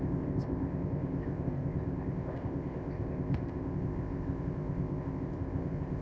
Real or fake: fake